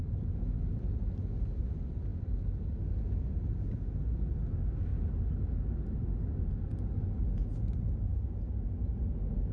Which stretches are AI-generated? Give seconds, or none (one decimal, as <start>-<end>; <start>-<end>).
none